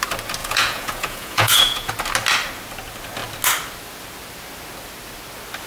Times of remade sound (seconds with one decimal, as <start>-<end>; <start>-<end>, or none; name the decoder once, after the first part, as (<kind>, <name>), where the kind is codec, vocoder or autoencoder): 0.4-1.9 (vocoder, Vocos)